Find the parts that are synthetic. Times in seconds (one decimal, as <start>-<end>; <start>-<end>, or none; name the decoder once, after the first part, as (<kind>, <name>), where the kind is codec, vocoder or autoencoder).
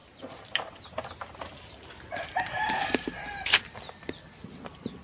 none